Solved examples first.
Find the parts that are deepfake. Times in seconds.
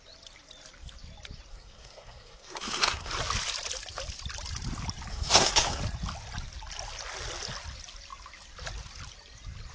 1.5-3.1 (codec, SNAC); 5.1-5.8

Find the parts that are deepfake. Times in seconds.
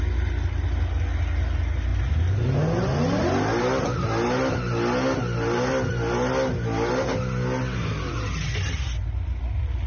none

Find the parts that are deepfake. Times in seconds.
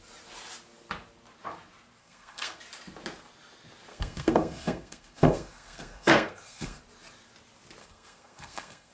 2.0-2.6 (codec, SNAC); 3.9-6.8; 7.8-8.9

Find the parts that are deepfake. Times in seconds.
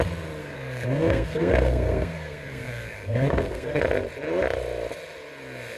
0.4-3.8 (codec, SNAC)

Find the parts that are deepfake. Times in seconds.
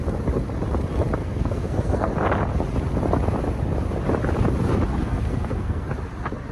1.2-2.1 (codec, SNAC); 4.9-5.9